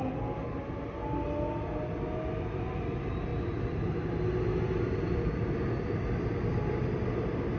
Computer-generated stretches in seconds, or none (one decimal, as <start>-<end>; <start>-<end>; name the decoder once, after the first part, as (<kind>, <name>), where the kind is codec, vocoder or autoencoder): none